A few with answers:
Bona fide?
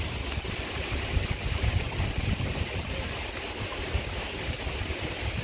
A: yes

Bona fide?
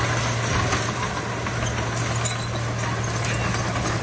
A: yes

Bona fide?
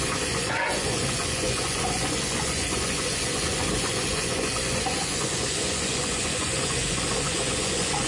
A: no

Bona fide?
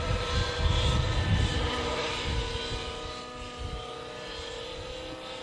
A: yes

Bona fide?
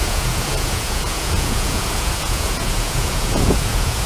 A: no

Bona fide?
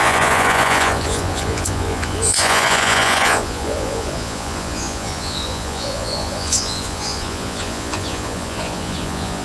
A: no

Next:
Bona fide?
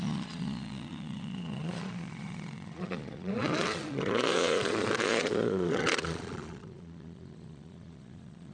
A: no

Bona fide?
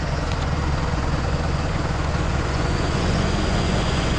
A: no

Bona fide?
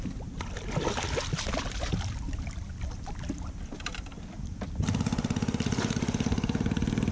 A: yes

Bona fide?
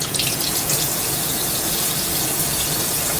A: no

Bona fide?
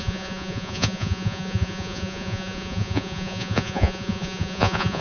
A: no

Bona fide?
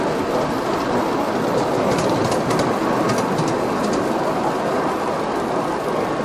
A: yes